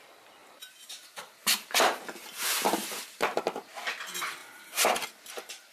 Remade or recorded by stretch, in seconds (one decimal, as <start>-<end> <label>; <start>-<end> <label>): 0.0-0.4 recorded; 0.4-3.8 remade; 3.8-4.4 recorded; 4.4-5.0 remade; 5.0-5.7 recorded